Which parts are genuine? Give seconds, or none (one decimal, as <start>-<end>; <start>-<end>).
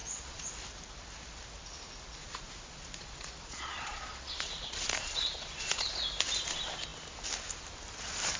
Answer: 0.5-2.2; 5.9-8.4